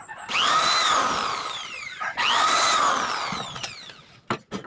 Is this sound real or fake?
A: real